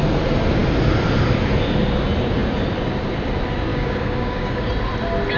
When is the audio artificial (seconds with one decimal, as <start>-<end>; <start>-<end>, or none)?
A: 3.7-4.7